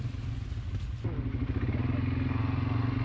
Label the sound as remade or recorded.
recorded